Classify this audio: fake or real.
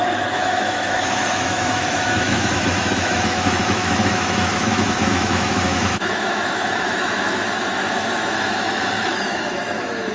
fake